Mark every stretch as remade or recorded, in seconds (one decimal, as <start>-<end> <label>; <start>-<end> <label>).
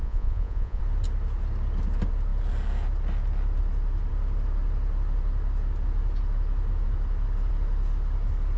0.0-0.8 remade; 0.8-8.6 recorded